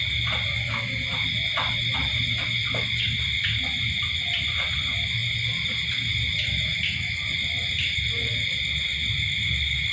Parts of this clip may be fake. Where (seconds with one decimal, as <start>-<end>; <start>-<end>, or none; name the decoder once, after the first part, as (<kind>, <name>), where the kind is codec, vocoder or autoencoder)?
none